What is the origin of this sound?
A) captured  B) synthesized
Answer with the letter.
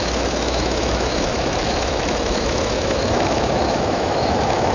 B